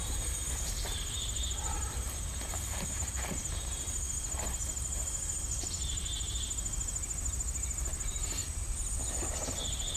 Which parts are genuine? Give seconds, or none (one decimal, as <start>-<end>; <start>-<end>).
3.9-5.3; 6.0-7.4; 8.4-9.2